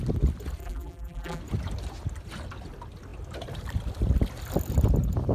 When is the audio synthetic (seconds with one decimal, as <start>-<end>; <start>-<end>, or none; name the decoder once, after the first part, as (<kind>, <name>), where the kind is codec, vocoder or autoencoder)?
0.6-1.4 (vocoder, BigVGAN v2)